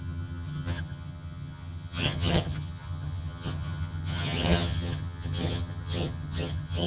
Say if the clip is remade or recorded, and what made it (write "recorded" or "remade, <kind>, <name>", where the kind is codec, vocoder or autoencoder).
remade, vocoder, HiFi-GAN